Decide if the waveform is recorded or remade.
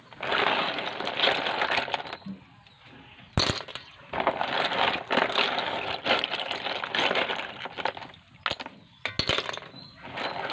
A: recorded